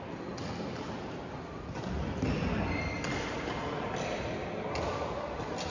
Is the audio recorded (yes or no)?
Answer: yes